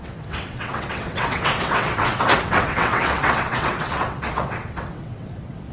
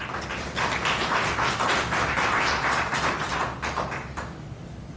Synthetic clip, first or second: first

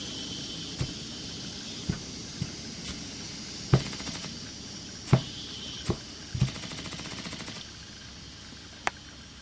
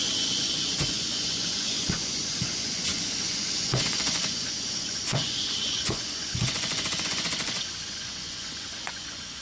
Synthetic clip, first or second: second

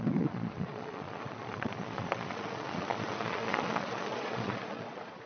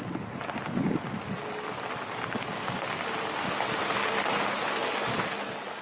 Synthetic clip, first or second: first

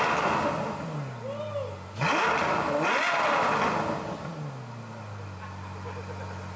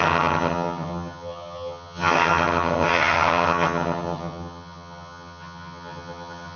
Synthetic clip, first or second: second